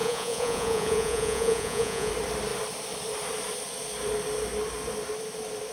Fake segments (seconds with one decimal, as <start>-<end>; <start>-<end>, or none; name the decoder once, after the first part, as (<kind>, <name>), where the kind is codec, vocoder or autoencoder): 0.0-2.1 (vocoder, Vocos)